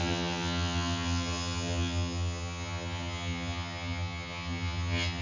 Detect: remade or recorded remade